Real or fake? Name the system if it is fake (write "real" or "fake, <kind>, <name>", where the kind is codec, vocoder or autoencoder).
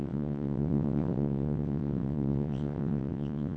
fake, vocoder, WaveNeXt